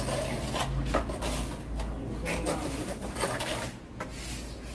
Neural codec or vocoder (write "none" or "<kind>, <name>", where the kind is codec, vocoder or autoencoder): none